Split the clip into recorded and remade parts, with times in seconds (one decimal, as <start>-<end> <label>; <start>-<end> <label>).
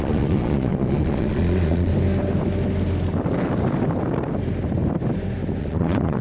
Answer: 0.0-1.9 remade; 1.9-5.6 recorded; 5.6-6.2 remade